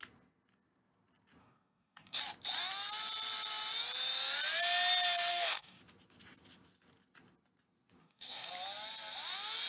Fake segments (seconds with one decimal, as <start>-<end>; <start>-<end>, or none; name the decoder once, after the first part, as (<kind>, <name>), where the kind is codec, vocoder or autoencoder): 1.4-2.2 (codec, DAC); 5.3-5.8; 8.0-8.5